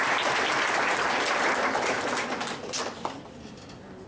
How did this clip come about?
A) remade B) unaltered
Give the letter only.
B